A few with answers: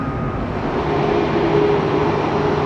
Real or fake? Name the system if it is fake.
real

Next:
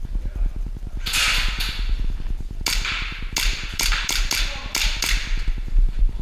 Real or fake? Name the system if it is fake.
real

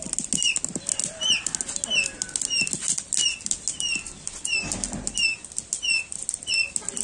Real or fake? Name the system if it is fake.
real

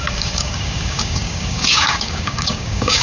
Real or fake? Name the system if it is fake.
fake, codec, DAC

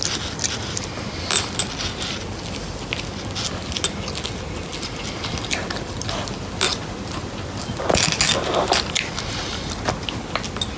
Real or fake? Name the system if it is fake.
real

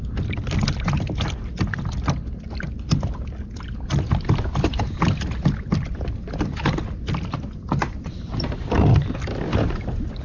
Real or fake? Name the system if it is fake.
real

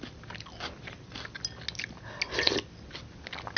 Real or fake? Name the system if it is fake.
real